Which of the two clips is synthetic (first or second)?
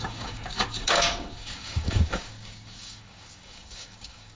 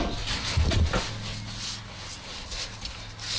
first